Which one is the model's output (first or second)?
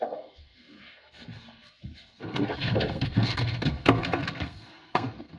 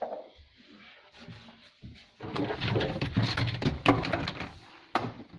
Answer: first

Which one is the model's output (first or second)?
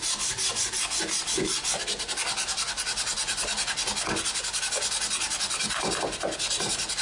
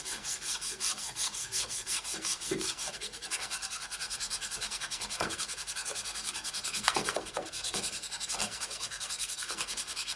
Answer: second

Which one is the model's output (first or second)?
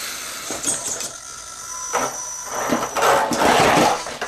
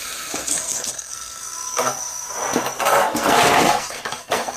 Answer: second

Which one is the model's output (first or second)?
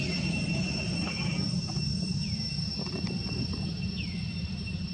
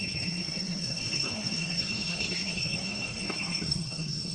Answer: second